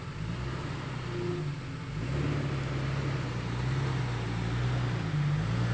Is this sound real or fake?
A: real